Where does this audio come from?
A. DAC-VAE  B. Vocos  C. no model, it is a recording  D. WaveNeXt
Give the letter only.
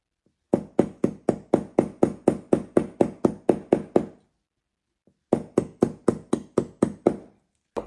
C